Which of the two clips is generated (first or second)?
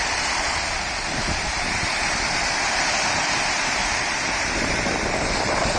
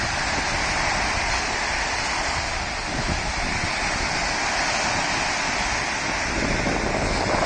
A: first